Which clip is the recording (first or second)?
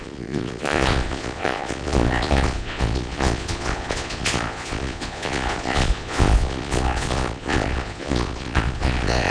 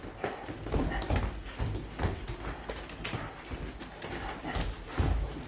second